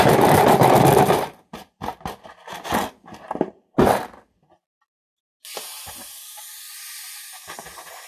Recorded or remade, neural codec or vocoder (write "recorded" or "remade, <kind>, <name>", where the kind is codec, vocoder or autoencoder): recorded